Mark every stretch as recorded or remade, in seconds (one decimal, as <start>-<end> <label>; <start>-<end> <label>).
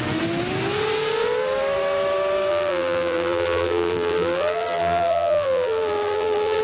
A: 0.0-2.5 recorded; 2.5-6.6 remade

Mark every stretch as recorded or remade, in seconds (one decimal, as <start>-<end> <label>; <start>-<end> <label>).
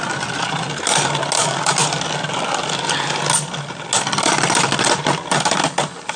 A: 0.0-6.2 recorded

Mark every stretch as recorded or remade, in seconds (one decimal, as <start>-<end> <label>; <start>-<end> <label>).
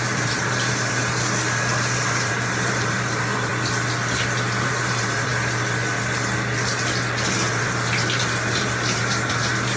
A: 0.0-3.5 remade; 3.5-4.6 recorded; 4.6-5.3 remade; 5.3-7.5 recorded; 7.5-9.8 remade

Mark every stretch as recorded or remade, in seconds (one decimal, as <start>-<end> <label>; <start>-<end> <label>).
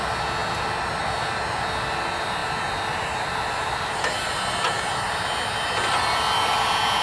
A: 0.0-7.0 recorded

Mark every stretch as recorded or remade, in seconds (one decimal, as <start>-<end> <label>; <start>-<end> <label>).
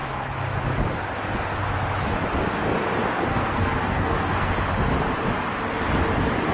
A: 0.0-3.3 recorded; 3.3-4.5 remade; 4.5-6.5 recorded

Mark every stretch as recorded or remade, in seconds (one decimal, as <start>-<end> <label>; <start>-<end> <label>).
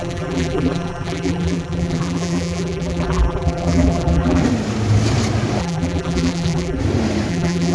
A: 0.0-4.4 remade; 4.4-5.6 recorded; 5.6-6.8 remade; 6.8-7.3 recorded; 7.3-7.7 remade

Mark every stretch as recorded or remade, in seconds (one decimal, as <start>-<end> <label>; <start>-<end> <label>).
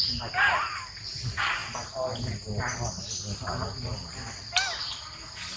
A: 0.0-5.6 recorded